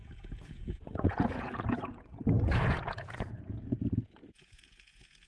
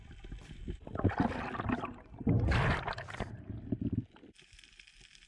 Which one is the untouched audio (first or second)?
second